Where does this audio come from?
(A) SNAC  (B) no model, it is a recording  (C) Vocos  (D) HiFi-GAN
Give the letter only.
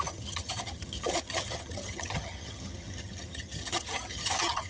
D